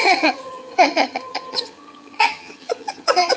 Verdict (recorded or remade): remade